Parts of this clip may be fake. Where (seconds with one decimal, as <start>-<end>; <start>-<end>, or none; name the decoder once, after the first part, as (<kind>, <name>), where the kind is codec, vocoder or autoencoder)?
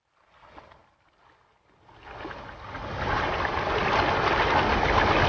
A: none